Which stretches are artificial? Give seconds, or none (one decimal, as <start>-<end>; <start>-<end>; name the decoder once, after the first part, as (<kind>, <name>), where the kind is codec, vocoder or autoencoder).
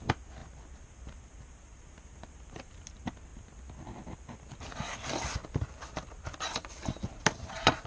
0.4-2.9 (vocoder, BigVGAN v2)